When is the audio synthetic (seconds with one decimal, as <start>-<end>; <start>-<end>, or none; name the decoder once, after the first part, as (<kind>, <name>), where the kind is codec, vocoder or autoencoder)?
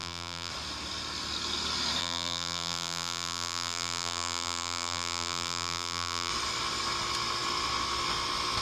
0.0-0.5 (vocoder, BigVGAN v2); 2.0-6.3